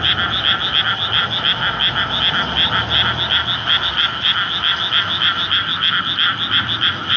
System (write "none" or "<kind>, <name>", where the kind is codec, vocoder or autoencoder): none